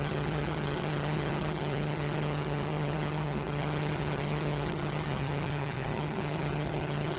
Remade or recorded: remade